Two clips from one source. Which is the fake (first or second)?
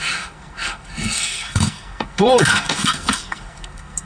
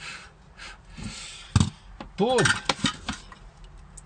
first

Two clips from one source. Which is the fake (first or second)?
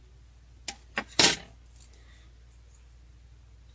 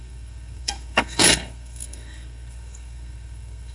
second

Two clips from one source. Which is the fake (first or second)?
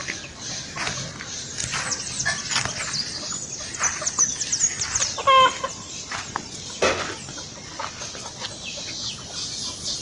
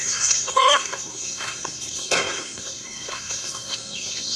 second